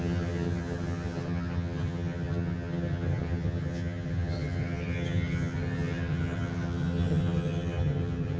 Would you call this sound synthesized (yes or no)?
yes